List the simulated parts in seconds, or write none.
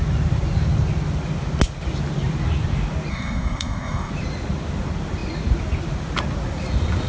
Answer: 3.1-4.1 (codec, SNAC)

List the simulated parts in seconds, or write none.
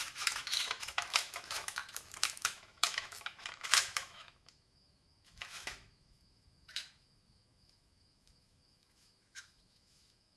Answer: 0.0-10.4 (autoencoder, DAC-VAE)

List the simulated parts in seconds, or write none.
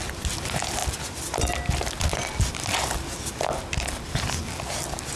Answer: none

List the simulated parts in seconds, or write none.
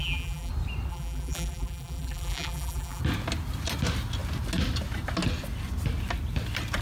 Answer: 0.0-0.5 (vocoder, BigVGAN v2); 0.9-3.0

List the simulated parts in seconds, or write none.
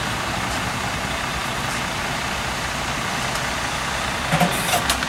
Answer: 0.0-5.1 (vocoder, BigVGAN v2)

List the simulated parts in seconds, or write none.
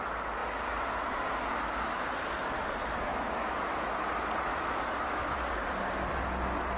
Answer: 3.1-3.9 (autoencoder, DAC-VAE); 4.5-5.5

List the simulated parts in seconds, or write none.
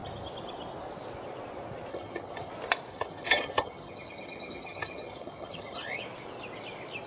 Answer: 1.9-2.5 (vocoder, HiFi-GAN); 2.9-6.0